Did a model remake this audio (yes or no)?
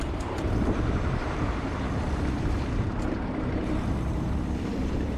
yes